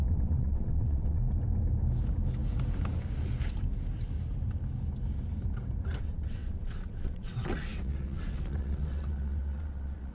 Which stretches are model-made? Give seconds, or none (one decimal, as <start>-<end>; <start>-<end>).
0.0-1.2; 6.0-10.1